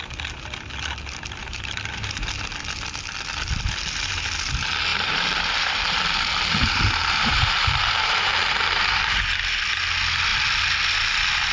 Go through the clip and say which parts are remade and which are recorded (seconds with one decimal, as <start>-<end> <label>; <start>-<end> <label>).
0.0-1.4 recorded; 1.4-2.3 remade; 2.3-4.9 recorded; 4.9-9.2 remade; 9.2-11.5 recorded